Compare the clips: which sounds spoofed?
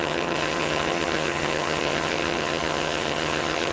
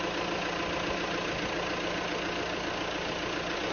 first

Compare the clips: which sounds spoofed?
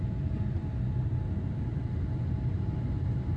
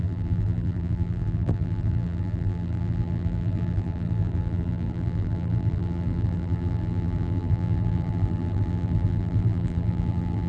second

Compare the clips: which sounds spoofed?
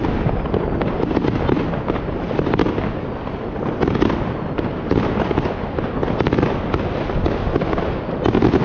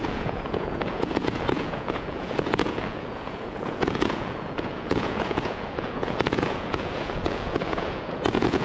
second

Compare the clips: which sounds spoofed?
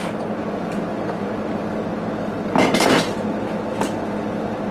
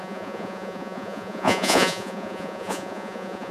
second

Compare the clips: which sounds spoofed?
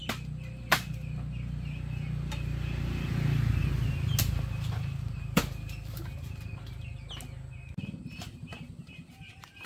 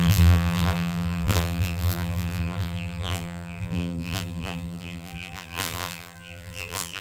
second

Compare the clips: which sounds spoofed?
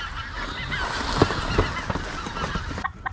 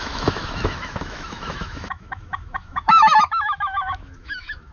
second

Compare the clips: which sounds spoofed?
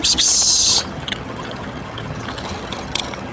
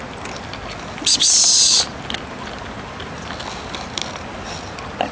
first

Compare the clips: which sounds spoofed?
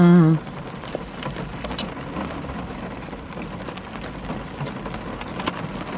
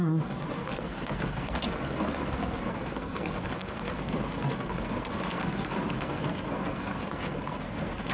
second